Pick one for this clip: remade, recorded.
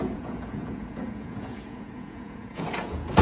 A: remade